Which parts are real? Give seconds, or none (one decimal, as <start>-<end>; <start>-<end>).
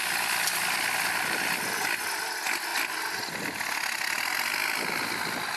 0.0-5.6